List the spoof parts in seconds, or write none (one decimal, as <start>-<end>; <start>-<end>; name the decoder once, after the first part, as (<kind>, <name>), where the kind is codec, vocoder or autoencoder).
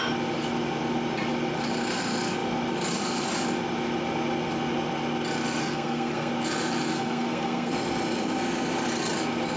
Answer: 5.6-6.3 (codec, SNAC); 6.9-7.7